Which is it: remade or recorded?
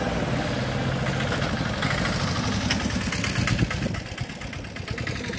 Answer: recorded